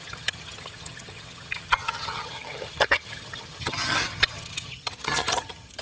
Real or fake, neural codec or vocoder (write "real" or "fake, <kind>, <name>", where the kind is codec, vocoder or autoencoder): fake, vocoder, HiFi-GAN